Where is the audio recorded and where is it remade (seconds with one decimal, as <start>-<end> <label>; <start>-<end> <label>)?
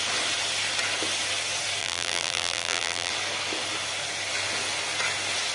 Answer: 0.0-1.8 recorded; 1.8-3.1 remade; 3.1-5.5 recorded